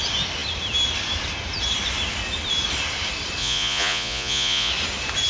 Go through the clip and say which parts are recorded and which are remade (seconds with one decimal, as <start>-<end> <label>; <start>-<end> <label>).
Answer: 0.0-3.4 recorded; 3.4-4.7 remade; 4.7-5.3 recorded